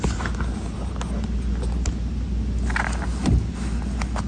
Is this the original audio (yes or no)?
yes